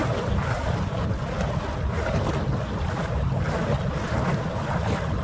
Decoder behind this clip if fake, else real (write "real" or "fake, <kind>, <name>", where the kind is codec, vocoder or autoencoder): real